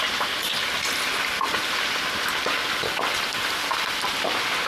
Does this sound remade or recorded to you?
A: recorded